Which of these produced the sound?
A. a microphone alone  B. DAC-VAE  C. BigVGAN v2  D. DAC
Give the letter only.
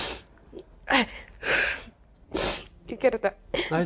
A